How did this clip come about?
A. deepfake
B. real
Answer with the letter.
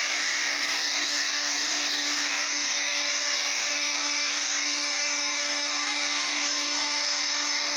A